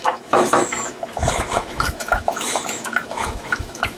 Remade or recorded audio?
remade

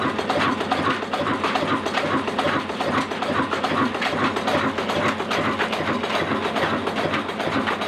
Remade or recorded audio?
recorded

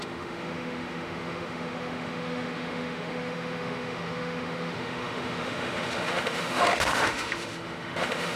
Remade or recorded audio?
remade